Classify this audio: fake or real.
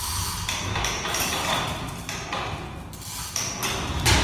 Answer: real